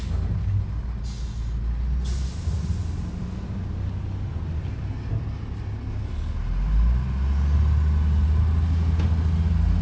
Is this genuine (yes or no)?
yes